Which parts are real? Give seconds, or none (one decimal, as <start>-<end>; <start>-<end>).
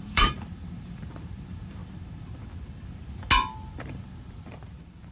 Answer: 1.8-3.7